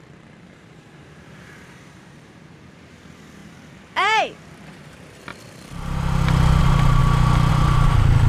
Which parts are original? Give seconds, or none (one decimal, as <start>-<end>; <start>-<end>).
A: 5.3-6.6; 7.0-7.5